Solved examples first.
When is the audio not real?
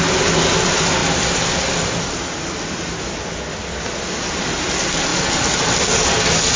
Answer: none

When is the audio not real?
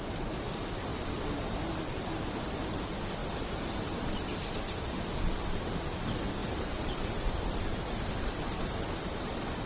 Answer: 6.4-8.8 (vocoder, BigVGAN v2)